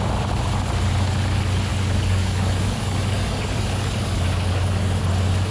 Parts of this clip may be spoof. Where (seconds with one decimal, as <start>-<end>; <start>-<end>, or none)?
1.7-5.0